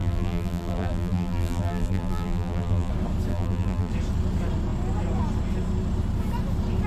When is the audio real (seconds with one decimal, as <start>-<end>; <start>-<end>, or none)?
2.9-3.3; 3.9-6.9